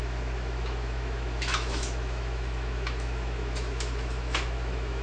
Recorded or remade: remade